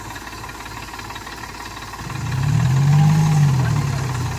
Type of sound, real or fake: real